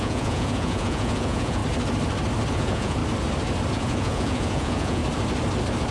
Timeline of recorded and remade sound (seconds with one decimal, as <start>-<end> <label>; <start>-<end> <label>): 0.0-1.6 remade; 1.6-2.5 recorded; 2.5-3.0 remade; 3.0-3.7 recorded; 3.7-5.0 remade; 5.0-5.9 recorded